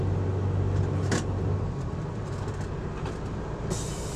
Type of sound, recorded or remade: recorded